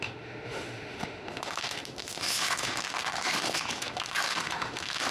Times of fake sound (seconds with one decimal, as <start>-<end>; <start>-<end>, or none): 0.0-5.1